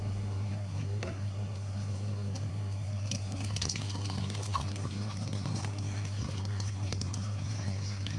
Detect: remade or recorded remade